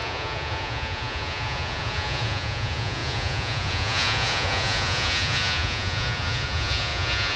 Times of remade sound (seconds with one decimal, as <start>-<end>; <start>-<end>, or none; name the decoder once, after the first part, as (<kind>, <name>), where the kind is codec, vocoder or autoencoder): 0.0-7.4 (vocoder, Vocos)